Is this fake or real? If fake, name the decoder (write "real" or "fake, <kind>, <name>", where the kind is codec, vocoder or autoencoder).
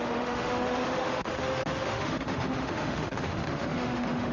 fake, autoencoder, DAC-VAE